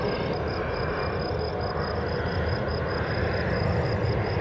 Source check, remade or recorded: recorded